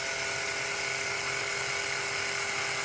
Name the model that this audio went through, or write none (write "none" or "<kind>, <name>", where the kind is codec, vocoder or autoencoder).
none